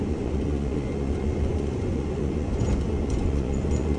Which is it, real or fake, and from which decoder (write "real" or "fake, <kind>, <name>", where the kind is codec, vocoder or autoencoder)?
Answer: fake, vocoder, Vocos